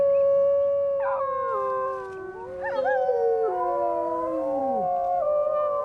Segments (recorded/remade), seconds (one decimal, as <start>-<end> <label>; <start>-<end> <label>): 0.0-5.8 recorded

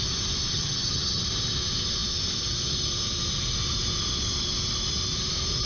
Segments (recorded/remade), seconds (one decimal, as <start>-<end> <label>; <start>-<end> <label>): 0.0-0.5 recorded; 0.5-1.2 remade; 1.2-5.7 recorded

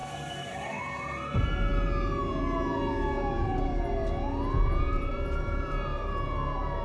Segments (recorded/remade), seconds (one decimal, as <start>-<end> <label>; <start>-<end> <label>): 0.0-0.8 remade; 0.8-6.8 recorded

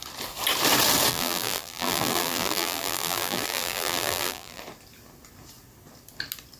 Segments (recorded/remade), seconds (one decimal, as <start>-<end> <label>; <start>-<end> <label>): 0.0-1.1 recorded; 1.1-4.6 remade; 4.6-6.6 recorded

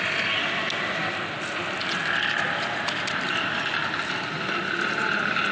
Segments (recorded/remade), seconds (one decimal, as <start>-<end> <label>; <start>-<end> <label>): 0.0-5.5 recorded

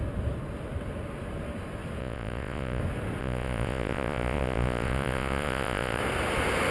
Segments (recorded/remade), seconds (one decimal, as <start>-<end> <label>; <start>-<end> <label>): 0.0-2.0 recorded; 2.0-2.8 remade; 2.8-3.2 recorded; 3.2-6.0 remade; 6.0-6.7 recorded